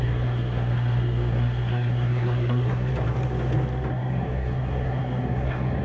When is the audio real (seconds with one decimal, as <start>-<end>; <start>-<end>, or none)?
2.9-3.9